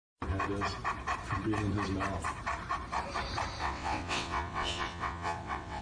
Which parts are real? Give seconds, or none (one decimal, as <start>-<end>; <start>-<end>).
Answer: 0.0-3.6